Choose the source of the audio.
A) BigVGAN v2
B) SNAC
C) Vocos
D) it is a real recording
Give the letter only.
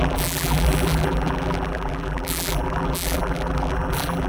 A